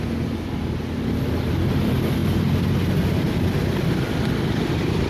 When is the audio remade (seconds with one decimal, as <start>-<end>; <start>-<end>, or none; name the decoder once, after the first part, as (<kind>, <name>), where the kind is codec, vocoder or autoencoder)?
none